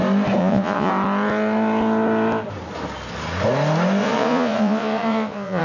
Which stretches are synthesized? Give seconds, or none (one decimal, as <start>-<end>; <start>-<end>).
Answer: 0.4-0.9; 4.0-5.6